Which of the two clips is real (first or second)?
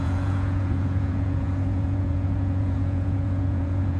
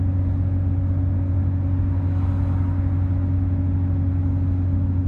second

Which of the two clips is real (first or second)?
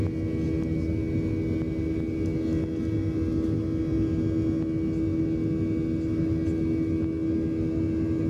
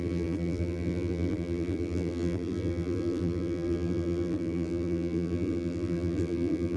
first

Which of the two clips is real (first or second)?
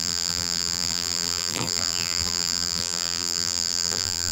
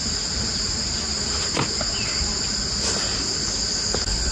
second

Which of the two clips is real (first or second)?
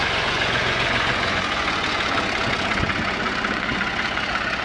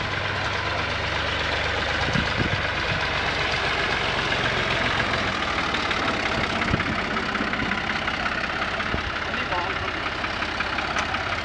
second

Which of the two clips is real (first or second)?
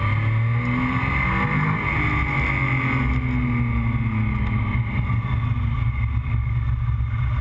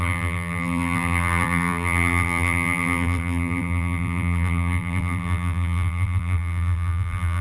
first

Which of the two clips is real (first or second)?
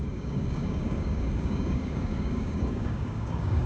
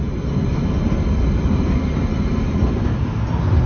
second